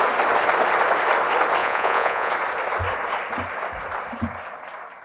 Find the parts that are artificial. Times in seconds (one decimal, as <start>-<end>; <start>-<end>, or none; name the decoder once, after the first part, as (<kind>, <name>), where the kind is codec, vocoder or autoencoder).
1.6-2.3 (vocoder, Vocos)